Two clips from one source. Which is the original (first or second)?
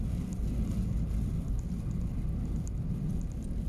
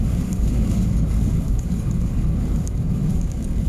first